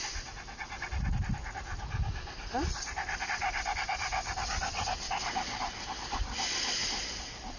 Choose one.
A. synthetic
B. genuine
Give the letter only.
B